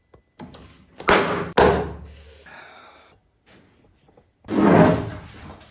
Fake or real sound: real